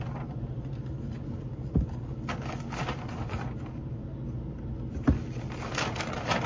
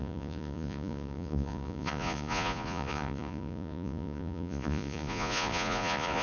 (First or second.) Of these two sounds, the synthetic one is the second